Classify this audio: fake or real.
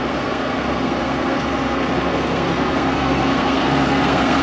fake